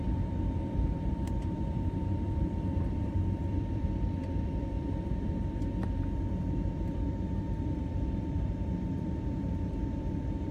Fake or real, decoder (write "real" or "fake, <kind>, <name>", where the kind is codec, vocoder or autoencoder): fake, vocoder, BigVGAN v2